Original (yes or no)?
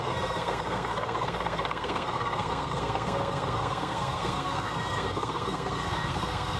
no